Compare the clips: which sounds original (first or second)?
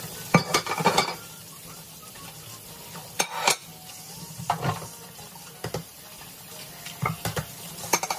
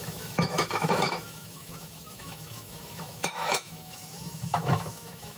first